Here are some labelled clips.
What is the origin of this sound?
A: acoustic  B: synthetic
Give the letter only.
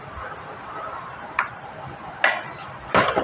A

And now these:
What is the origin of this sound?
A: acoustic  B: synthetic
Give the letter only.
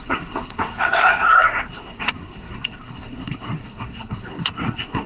B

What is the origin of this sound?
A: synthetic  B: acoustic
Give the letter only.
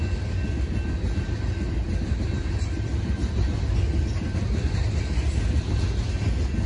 B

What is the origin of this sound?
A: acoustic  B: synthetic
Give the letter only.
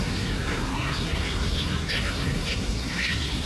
B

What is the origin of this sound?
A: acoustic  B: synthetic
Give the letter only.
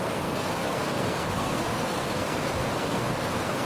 B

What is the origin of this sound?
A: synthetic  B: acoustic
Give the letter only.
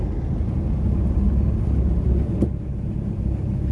B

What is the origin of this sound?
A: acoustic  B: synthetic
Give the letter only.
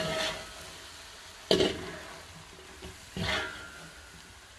A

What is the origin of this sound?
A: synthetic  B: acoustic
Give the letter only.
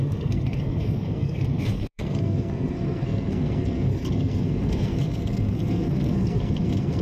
A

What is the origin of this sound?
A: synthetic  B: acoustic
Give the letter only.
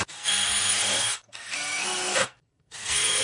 A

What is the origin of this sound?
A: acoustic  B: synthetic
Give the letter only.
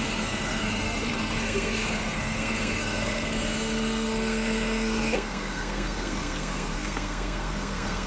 B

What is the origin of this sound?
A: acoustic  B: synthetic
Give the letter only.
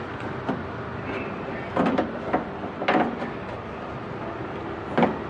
A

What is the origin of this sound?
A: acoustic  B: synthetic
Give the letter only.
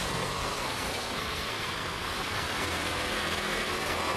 B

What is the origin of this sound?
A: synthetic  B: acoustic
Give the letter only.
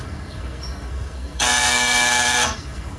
A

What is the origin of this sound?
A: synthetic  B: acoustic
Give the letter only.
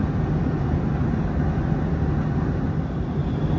B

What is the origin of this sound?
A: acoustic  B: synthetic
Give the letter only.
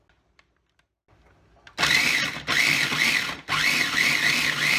A